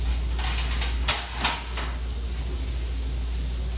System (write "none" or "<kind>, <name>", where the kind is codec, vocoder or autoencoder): none